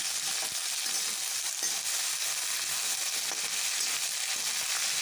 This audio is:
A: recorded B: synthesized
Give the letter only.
A